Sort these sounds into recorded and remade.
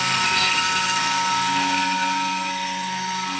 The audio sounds remade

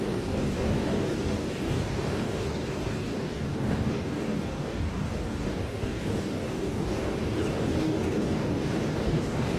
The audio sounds remade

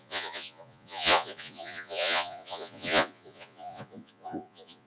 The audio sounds remade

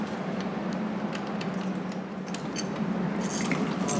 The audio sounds recorded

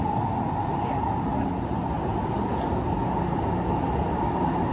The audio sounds recorded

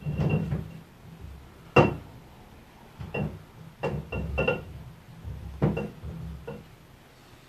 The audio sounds recorded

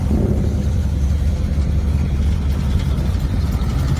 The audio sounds recorded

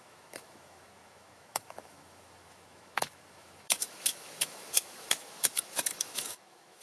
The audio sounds remade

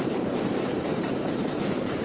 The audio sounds remade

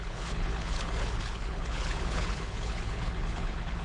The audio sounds remade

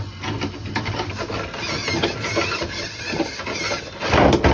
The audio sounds recorded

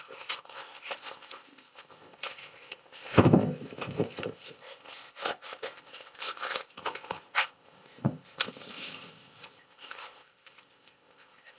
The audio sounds remade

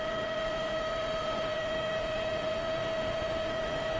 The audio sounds remade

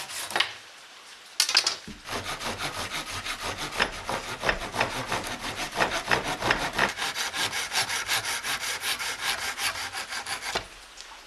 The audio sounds recorded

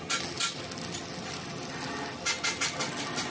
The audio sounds recorded